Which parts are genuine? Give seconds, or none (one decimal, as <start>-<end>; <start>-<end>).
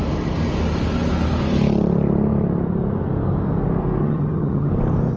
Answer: 0.0-4.0; 4.7-5.2